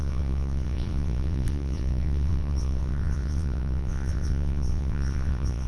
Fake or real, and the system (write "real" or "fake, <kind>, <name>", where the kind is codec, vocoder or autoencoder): fake, vocoder, WaveNeXt